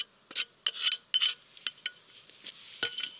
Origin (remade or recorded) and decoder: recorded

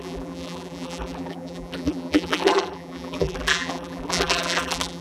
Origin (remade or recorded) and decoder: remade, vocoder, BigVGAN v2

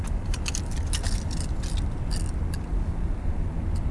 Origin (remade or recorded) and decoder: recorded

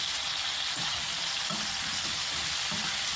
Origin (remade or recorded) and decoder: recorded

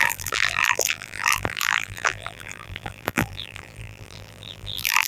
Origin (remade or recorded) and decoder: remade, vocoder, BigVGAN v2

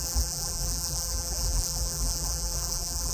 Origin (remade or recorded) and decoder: remade, vocoder, BigVGAN v2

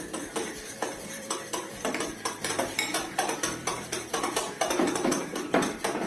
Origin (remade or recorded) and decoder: remade, vocoder, BigVGAN v2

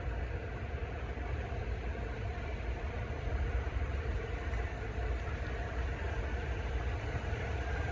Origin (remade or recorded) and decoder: remade, vocoder, BigVGAN v2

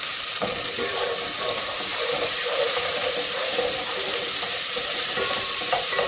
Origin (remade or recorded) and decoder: remade, vocoder, BigVGAN v2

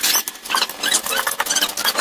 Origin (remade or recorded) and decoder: recorded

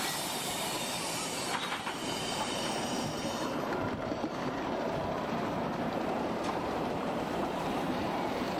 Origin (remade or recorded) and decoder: remade, vocoder, BigVGAN v2